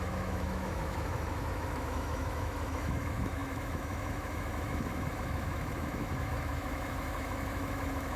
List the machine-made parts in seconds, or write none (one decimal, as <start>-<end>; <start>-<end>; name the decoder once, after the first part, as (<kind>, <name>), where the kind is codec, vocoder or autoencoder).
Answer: 0.0-8.2 (autoencoder, DAC-VAE)